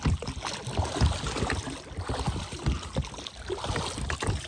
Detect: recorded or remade recorded